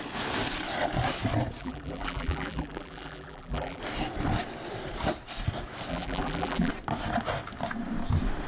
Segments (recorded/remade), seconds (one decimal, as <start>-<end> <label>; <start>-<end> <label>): 0.0-1.6 recorded; 1.6-3.8 remade; 3.8-5.9 recorded; 5.9-6.7 remade; 6.7-8.5 recorded